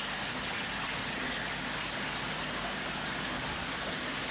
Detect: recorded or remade recorded